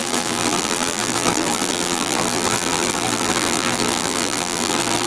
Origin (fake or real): fake